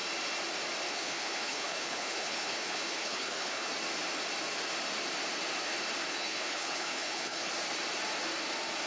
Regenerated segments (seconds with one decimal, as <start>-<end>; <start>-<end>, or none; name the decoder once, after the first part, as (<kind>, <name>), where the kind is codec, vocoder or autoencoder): 0.9-3.7 (codec, HILCodec); 6.1-7.5